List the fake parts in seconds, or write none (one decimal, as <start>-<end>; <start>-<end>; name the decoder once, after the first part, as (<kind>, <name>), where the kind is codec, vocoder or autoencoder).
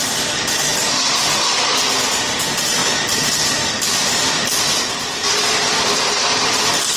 0.7-1.7 (vocoder, BigVGAN v2); 2.8-6.5